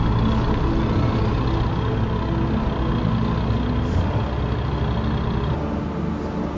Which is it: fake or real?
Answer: real